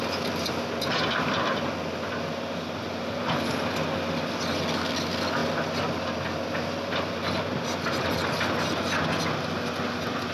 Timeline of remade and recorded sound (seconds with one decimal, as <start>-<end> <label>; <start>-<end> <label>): 0.0-10.3 recorded